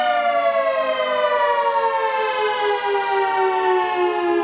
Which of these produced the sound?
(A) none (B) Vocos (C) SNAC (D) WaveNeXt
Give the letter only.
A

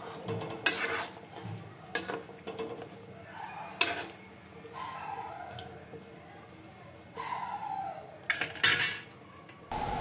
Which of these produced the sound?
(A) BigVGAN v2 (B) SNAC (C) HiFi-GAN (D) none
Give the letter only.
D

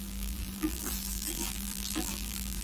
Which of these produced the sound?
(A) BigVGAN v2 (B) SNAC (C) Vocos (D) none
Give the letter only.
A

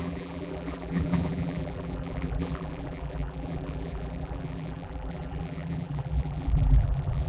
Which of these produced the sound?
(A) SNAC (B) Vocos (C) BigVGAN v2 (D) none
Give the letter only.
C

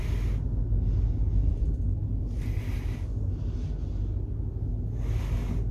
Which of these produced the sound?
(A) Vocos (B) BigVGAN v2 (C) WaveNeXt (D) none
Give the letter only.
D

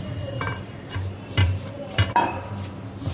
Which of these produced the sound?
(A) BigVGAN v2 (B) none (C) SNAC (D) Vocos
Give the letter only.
A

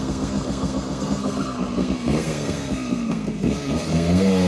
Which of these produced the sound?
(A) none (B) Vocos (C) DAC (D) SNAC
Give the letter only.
D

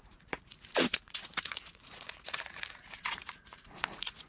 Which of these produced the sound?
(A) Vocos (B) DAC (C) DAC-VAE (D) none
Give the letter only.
A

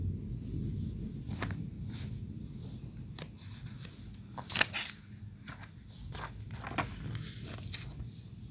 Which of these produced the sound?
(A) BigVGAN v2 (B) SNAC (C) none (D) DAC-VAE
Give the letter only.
C